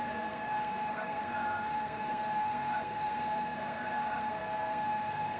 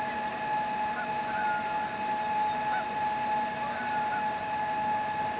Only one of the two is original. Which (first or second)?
second